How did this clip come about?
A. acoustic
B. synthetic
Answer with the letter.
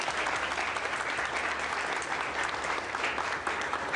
A